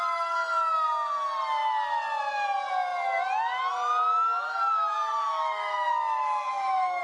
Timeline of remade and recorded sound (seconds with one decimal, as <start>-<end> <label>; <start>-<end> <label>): 0.0-5.2 recorded; 5.2-7.0 remade